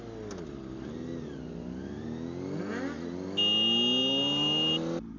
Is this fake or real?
real